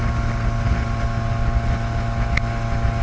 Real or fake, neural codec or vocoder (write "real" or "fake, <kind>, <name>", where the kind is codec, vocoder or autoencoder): real